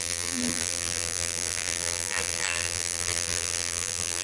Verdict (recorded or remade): remade